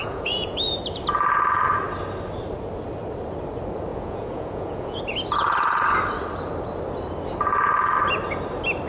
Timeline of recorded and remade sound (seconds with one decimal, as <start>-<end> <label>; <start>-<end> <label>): 0.0-0.8 remade; 0.8-3.9 recorded; 3.9-5.0 remade; 5.0-8.9 recorded